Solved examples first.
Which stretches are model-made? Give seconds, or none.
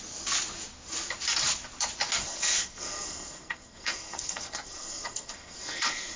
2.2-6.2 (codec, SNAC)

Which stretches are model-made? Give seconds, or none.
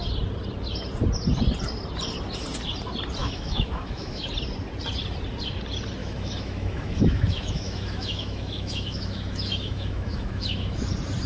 3.2-4.3 (autoencoder, DAC-VAE); 6.0-10.9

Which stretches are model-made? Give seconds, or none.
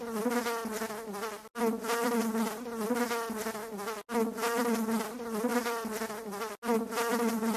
5.5-6.2 (vocoder, BigVGAN v2); 6.7-7.6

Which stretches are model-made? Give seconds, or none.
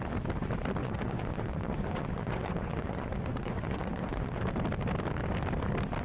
0.8-4.4 (vocoder, Vocos)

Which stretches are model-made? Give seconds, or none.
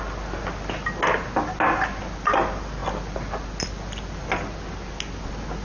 none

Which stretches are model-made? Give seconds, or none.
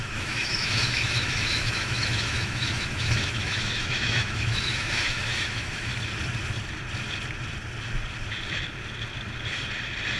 0.0-5.9 (autoencoder, DAC-VAE)